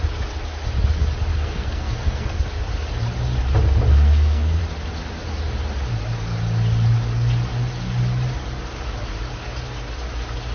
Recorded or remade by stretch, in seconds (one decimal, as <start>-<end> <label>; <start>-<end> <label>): 0.0-1.3 recorded; 1.3-2.4 remade; 2.4-3.9 recorded; 3.9-4.6 remade; 4.6-10.5 recorded